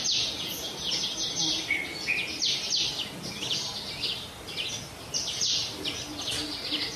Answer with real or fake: real